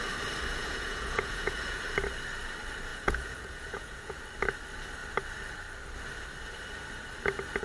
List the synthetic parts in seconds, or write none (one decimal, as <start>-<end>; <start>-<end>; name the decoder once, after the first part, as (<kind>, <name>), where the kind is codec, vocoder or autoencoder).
0.5-1.8 (vocoder, Vocos); 2.9-4.2